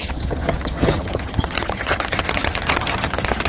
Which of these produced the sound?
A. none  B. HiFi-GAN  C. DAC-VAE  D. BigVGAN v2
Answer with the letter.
B